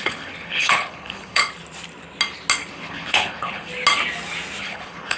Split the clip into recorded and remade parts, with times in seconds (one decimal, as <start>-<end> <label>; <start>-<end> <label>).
0.0-1.4 remade; 1.4-2.7 recorded; 2.7-3.7 remade; 3.7-4.6 recorded; 4.6-5.2 remade